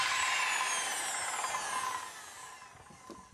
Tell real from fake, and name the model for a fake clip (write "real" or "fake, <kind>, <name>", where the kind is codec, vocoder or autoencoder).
real